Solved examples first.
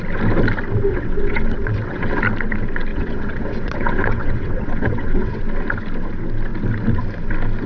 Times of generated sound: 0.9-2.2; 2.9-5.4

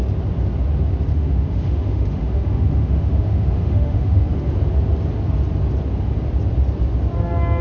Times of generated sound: 1.1-4.5

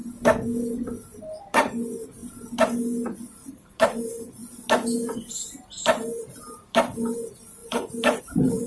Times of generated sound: 1.4-2.2; 3.5-4.4; 5.6-8.7

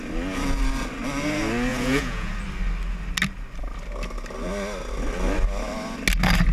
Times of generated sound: 1.7-2.3

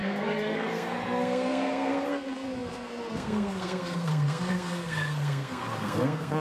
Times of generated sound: 0.0-6.4

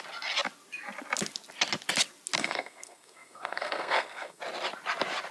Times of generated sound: 2.4-4.4